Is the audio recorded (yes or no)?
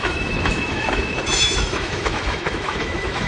no